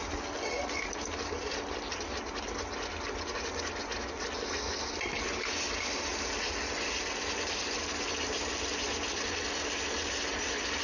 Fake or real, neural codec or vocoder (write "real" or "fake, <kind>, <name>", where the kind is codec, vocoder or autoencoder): real